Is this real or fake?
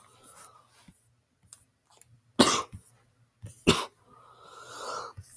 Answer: real